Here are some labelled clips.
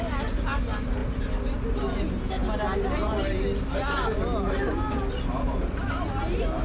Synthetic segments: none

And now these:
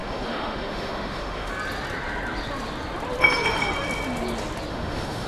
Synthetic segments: 0.0-1.5 (autoencoder, DAC-VAE); 4.7-5.3

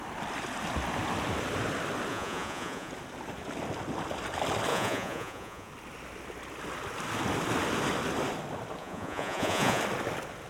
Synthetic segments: 2.1-2.9 (vocoder, Vocos); 4.7-5.7; 8.8-9.8